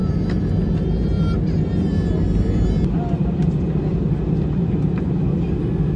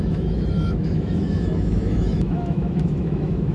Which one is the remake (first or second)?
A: second